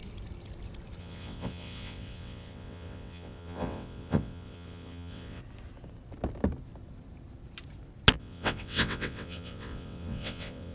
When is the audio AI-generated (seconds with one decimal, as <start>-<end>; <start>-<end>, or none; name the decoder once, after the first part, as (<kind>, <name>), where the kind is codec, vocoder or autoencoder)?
1.0-5.4 (vocoder, WaveNeXt); 8.2-10.7